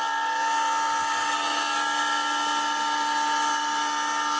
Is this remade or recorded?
recorded